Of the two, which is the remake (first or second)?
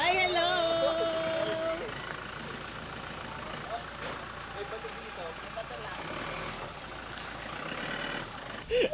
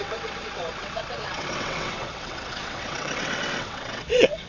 second